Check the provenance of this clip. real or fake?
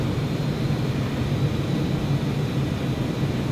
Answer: real